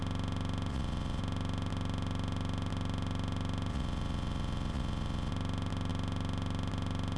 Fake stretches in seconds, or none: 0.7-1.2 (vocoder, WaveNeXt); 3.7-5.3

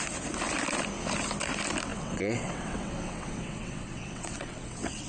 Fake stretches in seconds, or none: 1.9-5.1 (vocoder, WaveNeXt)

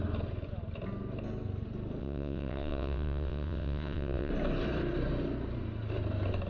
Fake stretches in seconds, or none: 2.0-4.3 (vocoder, WaveNeXt)